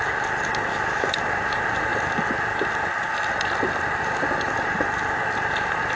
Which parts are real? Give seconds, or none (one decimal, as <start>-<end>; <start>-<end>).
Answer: 0.0-0.7; 1.2-6.0